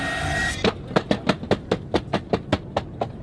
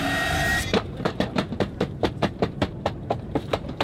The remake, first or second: second